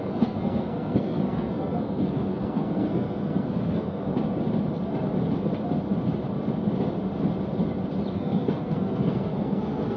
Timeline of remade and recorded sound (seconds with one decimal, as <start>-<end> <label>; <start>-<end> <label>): 0.0-4.1 remade; 4.1-8.1 recorded; 8.1-10.0 remade